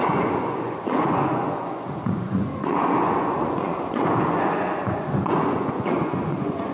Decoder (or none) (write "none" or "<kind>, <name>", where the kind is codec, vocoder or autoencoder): vocoder, Vocos